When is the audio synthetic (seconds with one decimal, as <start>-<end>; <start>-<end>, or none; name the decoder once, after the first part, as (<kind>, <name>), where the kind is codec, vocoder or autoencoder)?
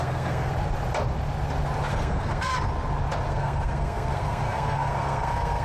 0.0-0.5 (codec, SNAC); 1.9-2.5; 3.3-5.6